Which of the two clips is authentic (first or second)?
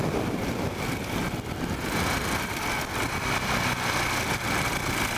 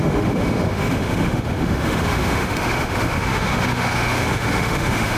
first